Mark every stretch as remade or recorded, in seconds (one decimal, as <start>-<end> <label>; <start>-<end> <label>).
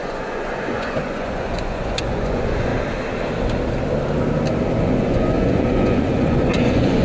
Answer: 0.0-2.7 remade; 2.7-4.8 recorded; 4.8-7.0 remade